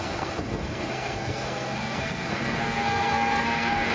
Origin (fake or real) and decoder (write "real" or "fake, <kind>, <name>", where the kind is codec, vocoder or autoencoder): fake, codec, SNAC